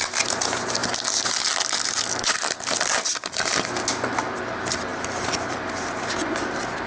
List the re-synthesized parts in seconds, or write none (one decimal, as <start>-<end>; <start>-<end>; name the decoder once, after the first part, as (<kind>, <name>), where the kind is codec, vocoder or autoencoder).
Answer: none